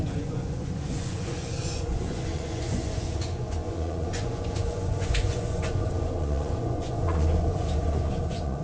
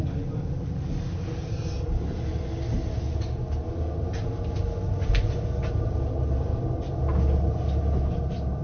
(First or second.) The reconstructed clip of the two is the first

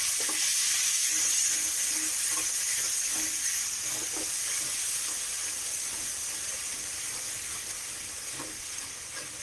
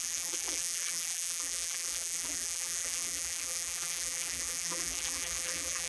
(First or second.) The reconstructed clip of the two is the second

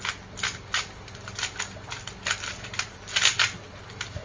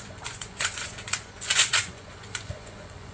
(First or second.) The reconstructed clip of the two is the second